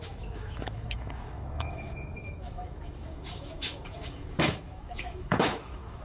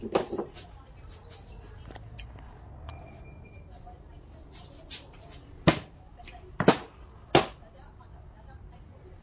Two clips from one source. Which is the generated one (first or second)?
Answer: first